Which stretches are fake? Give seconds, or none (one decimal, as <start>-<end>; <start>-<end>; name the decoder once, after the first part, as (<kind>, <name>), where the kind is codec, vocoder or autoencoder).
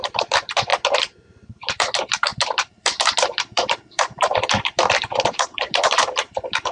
0.0-0.7 (vocoder, BigVGAN v2); 1.3-6.7